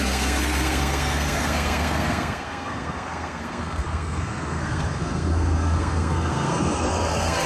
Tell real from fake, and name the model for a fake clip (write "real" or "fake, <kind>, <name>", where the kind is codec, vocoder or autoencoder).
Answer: fake, codec, SNAC